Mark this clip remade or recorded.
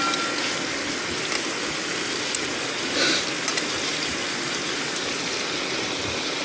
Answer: recorded